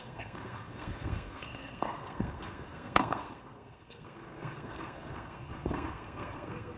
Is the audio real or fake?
fake